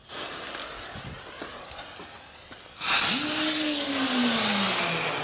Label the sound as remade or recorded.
recorded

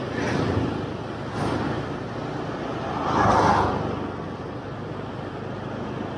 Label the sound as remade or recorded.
recorded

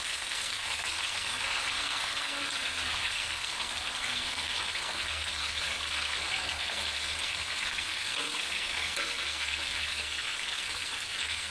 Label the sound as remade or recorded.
remade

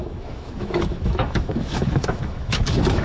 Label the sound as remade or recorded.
remade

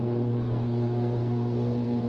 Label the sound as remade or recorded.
remade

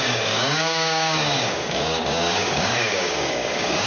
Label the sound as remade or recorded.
remade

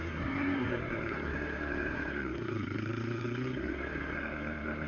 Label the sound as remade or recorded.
remade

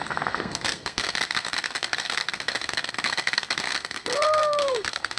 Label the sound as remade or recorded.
remade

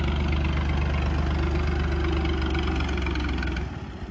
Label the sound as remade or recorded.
recorded